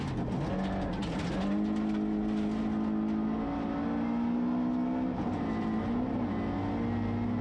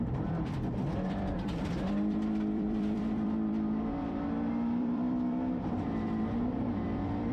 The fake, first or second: second